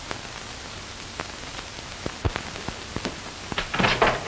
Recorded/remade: recorded